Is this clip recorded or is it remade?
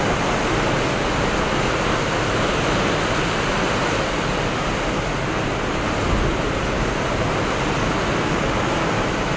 recorded